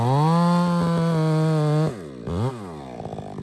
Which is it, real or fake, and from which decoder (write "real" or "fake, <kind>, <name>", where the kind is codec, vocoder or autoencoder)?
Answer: real